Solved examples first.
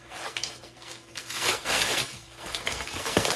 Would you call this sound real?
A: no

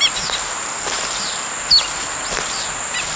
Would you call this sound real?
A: yes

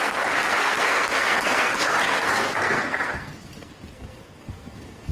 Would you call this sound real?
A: no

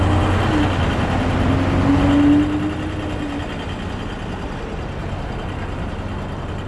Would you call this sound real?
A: yes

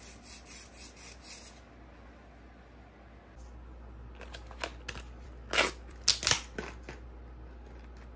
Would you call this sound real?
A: yes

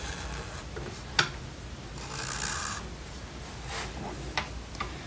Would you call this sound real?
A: yes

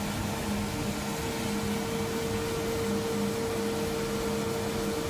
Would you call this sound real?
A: yes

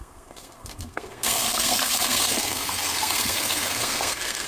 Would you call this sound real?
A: no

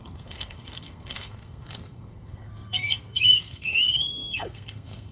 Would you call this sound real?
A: no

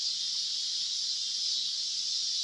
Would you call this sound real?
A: yes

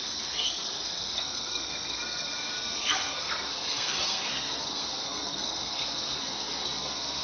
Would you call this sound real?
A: no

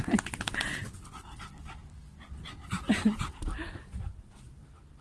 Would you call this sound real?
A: yes